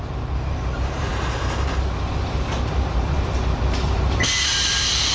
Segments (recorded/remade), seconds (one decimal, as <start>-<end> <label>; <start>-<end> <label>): 0.0-5.1 remade